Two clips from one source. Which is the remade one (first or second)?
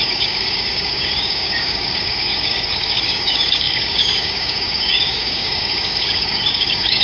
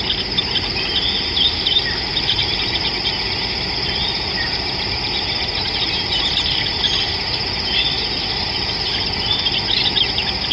first